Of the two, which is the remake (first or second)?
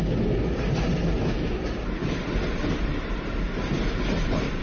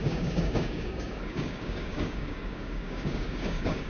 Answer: second